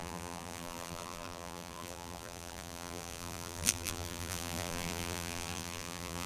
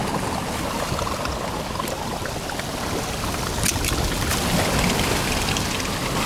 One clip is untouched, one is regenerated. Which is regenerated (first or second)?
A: first